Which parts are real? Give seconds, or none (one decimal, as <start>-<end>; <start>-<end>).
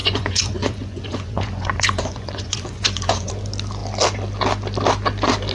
3.3-5.5